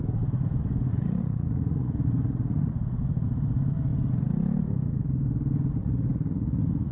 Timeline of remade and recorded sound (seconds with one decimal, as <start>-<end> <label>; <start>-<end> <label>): 0.0-0.9 recorded; 0.9-2.7 remade; 2.7-5.8 recorded; 5.8-6.9 remade